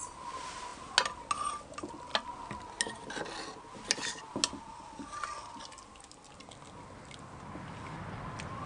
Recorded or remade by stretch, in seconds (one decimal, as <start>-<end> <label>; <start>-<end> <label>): 0.0-8.7 recorded